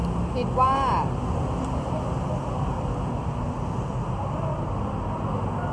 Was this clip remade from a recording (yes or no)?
no